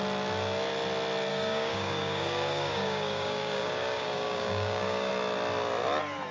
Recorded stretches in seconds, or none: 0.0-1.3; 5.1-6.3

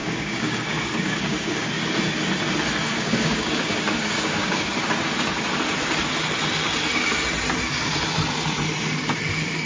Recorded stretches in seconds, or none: 1.7-2.8; 4.7-9.7

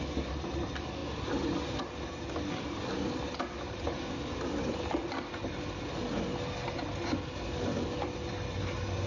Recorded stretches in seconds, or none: 0.0-9.1